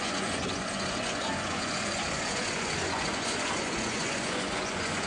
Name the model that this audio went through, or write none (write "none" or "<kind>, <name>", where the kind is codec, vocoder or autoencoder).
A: vocoder, Vocos